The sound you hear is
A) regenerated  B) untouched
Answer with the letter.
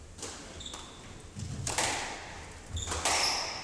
B